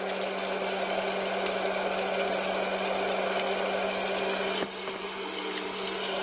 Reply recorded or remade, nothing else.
recorded